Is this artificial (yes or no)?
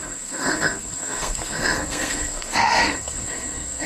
yes